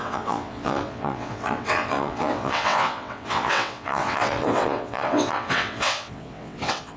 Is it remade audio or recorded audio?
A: remade